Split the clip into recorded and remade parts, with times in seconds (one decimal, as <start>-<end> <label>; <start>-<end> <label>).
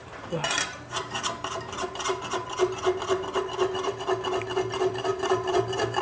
0.0-2.2 remade; 2.2-5.1 recorded; 5.1-6.0 remade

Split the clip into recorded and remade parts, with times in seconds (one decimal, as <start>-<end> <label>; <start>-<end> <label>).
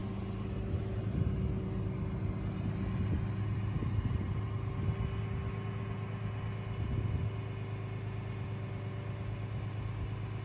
0.0-10.4 recorded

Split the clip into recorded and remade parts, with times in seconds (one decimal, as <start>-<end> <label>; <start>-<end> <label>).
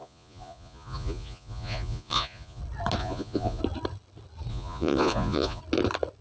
0.0-2.6 remade; 2.6-3.0 recorded; 3.0-3.6 remade; 3.6-4.5 recorded; 4.5-5.6 remade; 5.6-6.2 recorded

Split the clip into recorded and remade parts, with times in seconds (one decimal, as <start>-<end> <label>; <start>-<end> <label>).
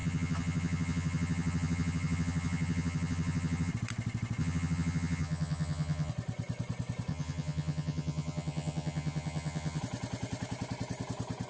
0.0-3.7 remade; 3.7-4.4 recorded; 4.4-6.1 remade; 6.1-7.1 recorded; 7.1-9.8 remade; 9.8-11.5 recorded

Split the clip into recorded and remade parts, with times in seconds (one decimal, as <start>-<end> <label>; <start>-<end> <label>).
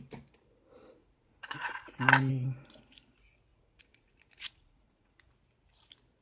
0.0-1.0 recorded; 1.0-2.3 remade; 2.3-3.5 recorded; 3.5-5.3 remade; 5.3-6.2 recorded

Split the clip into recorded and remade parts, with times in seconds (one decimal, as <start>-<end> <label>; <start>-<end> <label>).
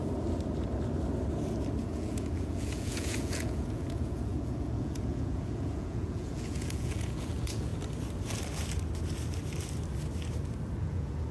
0.0-1.8 recorded; 1.8-7.7 remade; 7.7-10.8 recorded; 10.8-11.3 remade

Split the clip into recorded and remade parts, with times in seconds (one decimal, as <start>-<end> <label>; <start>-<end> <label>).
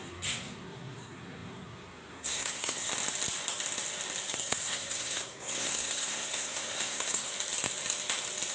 0.0-2.9 remade; 2.9-4.4 recorded; 4.4-7.3 remade; 7.3-8.5 recorded